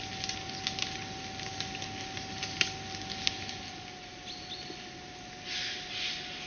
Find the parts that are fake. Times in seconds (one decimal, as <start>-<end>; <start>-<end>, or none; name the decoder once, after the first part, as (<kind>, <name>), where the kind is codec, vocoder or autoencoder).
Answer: none